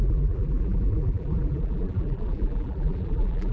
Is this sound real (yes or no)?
no